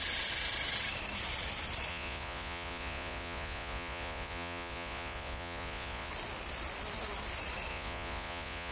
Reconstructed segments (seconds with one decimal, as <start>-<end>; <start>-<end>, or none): 1.9-6.1; 7.7-8.7